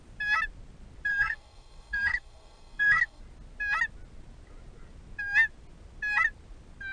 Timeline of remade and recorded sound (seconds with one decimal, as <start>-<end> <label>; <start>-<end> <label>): 0.0-1.1 recorded; 1.1-3.2 remade; 3.2-6.9 recorded